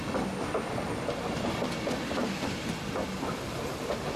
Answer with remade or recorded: recorded